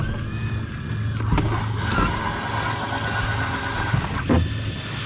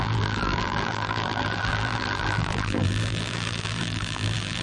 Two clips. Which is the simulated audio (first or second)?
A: second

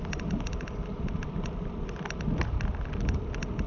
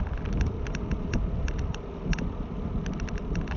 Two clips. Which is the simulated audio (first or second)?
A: second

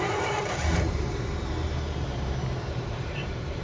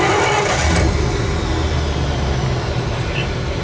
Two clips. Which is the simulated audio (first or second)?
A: first